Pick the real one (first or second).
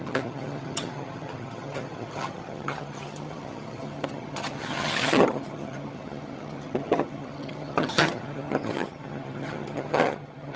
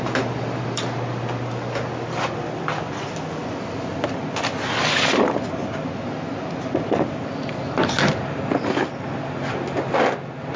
second